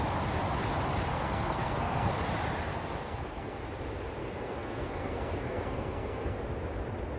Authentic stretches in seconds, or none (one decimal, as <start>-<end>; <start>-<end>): 0.0-1.1; 2.1-2.7; 3.6-4.2; 6.4-7.2